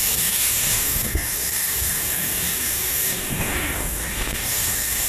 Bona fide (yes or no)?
no